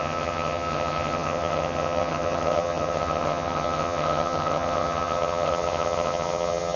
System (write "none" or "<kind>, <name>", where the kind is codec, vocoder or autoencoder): vocoder, HiFi-GAN